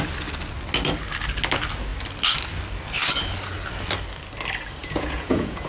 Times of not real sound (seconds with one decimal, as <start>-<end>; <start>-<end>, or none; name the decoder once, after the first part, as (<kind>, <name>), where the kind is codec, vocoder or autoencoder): 4.8-5.7 (vocoder, Vocos)